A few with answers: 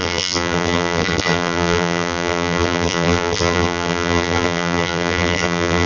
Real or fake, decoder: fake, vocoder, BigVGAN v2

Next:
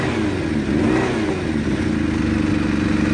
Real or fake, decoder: real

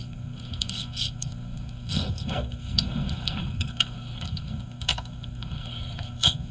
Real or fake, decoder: fake, codec, SNAC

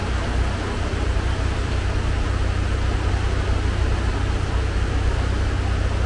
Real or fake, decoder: real